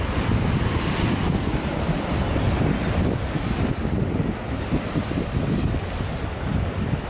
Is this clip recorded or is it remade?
recorded